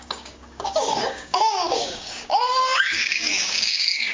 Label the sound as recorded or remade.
remade